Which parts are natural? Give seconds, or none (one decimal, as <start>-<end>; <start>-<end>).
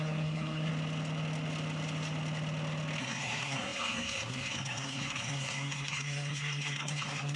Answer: 0.7-3.0